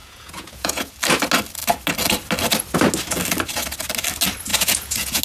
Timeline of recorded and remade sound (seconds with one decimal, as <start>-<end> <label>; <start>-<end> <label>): 0.0-0.9 remade; 0.9-4.5 recorded; 4.5-5.2 remade